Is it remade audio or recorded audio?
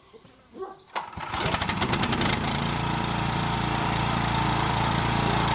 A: remade